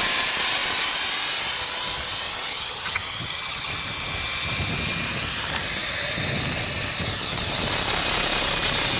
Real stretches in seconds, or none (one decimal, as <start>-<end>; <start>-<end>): 0.0-2.5; 3.7-9.0

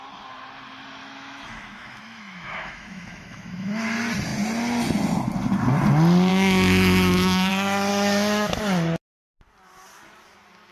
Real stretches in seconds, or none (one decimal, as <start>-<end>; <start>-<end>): 0.0-1.0; 3.8-6.3; 7.5-7.9; 8.6-10.7